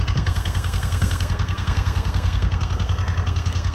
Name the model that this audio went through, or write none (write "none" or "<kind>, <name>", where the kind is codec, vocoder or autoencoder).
codec, SNAC